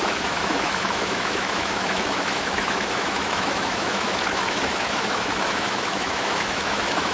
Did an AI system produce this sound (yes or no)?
yes